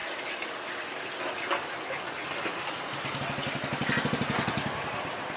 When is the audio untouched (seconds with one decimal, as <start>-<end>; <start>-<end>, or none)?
0.0-5.4